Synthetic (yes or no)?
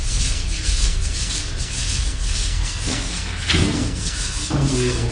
yes